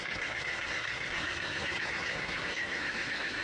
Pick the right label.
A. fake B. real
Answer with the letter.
A